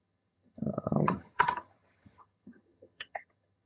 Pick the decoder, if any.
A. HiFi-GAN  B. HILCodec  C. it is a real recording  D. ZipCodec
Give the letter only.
A